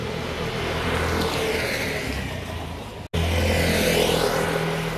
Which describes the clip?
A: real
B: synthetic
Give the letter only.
A